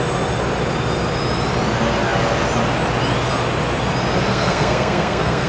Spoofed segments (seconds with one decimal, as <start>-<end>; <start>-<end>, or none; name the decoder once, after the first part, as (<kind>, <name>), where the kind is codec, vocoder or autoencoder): 4.3-5.5 (codec, SNAC)